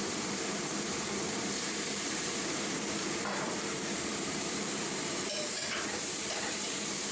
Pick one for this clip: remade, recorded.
remade